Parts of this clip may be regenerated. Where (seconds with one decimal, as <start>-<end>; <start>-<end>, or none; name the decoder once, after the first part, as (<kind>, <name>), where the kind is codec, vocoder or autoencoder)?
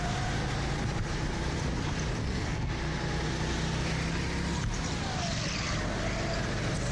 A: 2.2-2.7 (codec, SNAC)